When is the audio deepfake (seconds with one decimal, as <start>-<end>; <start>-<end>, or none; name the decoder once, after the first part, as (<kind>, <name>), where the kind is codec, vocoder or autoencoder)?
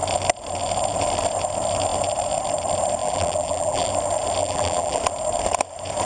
3.0-3.9 (vocoder, BigVGAN v2); 4.4-5.0